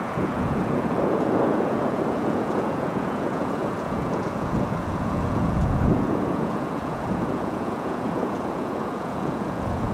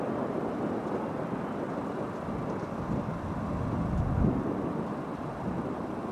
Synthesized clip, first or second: first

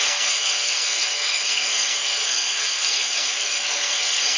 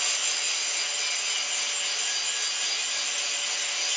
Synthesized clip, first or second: first